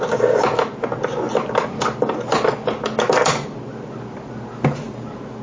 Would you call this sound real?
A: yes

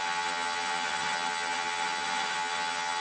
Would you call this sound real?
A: no